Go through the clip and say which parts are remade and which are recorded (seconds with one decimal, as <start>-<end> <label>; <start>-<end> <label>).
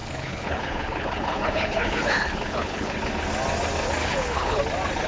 0.0-3.1 remade; 3.1-4.0 recorded; 4.0-4.6 remade; 4.6-5.1 recorded